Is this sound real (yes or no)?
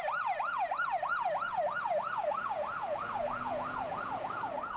no